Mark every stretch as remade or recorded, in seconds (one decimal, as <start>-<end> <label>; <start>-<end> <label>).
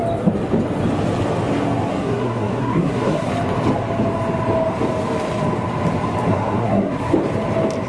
0.0-1.9 recorded; 1.9-3.3 remade; 3.3-6.3 recorded; 6.3-7.1 remade; 7.1-7.9 recorded